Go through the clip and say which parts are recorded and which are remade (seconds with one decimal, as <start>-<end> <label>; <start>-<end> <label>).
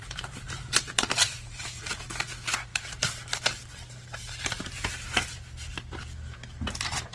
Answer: 0.0-1.8 remade; 1.8-2.7 recorded; 2.7-5.7 remade; 5.7-7.1 recorded